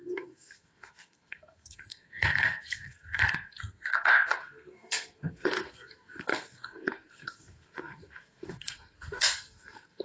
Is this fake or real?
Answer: fake